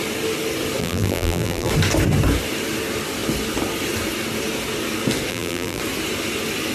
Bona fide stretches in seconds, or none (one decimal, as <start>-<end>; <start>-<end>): 0.0-0.8; 1.7-5.3; 5.8-6.7